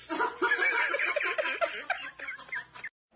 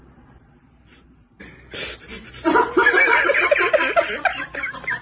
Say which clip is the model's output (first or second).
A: second